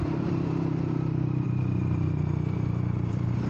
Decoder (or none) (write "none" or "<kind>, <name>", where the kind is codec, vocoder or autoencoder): vocoder, BigVGAN v2